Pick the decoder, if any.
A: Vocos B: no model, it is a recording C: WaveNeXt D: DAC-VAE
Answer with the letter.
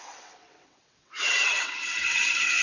C